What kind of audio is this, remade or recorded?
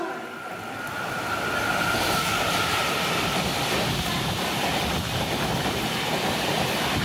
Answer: recorded